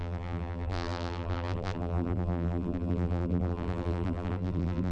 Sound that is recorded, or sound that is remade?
remade